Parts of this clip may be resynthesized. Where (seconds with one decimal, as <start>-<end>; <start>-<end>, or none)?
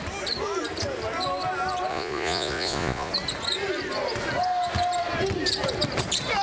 1.9-3.1